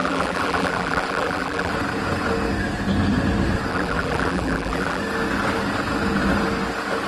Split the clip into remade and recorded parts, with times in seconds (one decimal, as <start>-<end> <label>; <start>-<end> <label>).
0.0-1.7 remade; 1.7-3.7 recorded; 3.7-5.0 remade; 5.0-7.1 recorded